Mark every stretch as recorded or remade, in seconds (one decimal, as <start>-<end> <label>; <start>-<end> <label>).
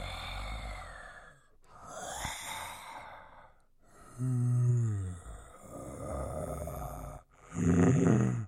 0.0-6.4 recorded; 6.4-8.1 remade; 8.1-8.5 recorded